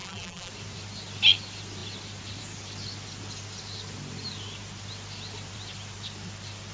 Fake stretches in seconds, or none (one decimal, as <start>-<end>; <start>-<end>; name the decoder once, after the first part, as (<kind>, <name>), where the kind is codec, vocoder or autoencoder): 0.0-0.5 (vocoder, BigVGAN v2)